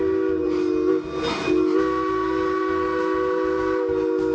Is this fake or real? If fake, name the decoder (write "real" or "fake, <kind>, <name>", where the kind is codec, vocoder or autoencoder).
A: real